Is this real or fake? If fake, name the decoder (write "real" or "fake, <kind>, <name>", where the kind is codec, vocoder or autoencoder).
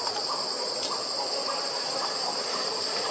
real